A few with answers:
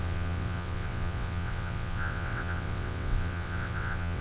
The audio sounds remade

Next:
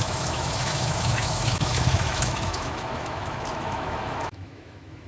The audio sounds remade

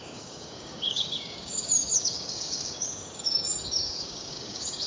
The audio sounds remade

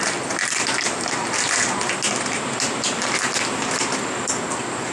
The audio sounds recorded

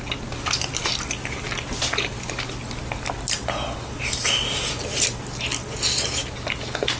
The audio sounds recorded